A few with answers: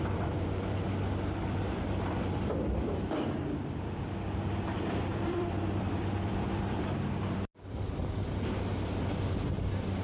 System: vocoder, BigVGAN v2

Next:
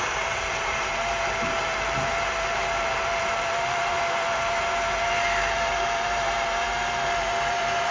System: vocoder, BigVGAN v2